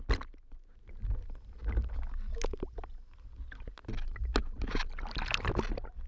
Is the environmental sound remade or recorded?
recorded